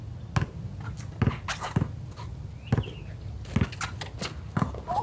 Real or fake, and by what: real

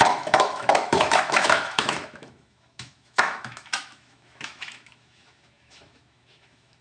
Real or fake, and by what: fake, autoencoder, DAC-VAE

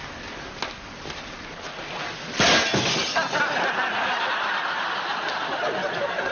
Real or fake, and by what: real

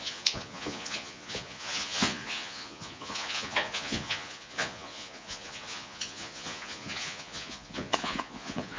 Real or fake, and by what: fake, vocoder, Vocos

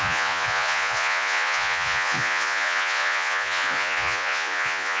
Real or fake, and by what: fake, vocoder, Vocos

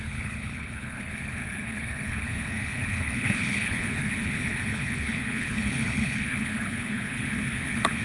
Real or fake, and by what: fake, codec, HILCodec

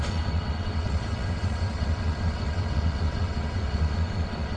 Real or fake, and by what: fake, vocoder, WaveNeXt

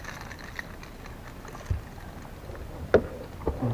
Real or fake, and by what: real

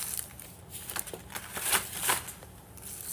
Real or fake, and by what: real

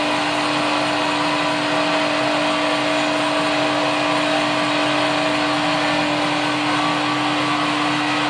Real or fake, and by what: real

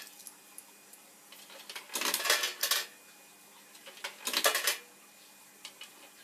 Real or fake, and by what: real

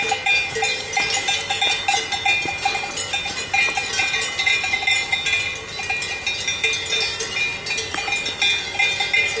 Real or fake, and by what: real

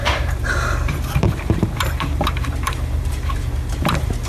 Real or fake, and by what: fake, vocoder, BigVGAN v2